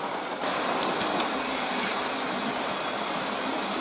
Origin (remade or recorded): recorded